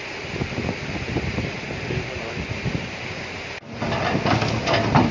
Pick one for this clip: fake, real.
real